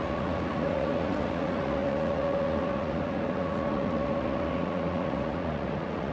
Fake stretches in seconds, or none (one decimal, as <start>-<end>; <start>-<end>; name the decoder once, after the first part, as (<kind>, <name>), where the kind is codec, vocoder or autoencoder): 0.0-6.1 (vocoder, Vocos)